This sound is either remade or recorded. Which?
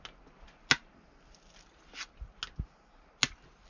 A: recorded